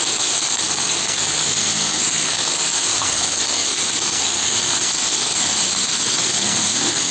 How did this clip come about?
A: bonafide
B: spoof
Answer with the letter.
B